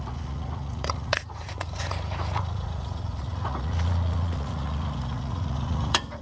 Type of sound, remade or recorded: remade